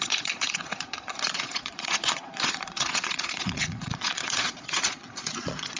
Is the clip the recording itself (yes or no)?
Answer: no